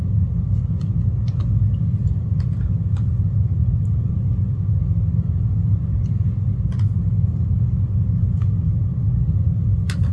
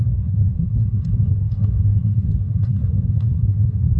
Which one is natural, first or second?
first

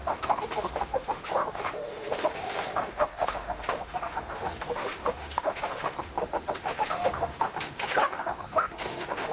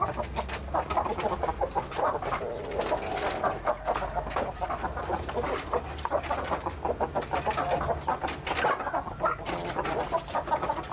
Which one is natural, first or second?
second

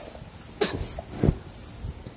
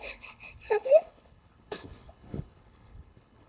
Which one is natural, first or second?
first